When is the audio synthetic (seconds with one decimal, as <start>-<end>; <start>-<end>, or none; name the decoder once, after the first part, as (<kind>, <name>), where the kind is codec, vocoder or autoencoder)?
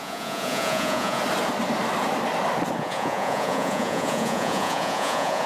0.0-1.2 (vocoder, Vocos); 2.8-5.5